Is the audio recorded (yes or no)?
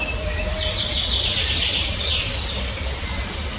yes